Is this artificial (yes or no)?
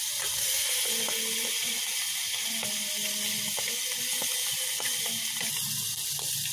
no